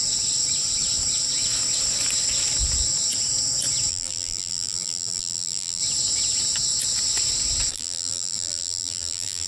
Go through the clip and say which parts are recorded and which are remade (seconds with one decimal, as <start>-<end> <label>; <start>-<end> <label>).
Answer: 0.0-3.9 recorded; 3.9-5.8 remade; 5.8-7.7 recorded; 7.7-9.5 remade